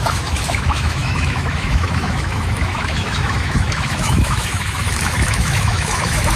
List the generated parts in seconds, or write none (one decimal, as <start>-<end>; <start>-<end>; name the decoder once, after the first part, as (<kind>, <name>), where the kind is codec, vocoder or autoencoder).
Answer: 0.0-6.4 (autoencoder, DAC-VAE)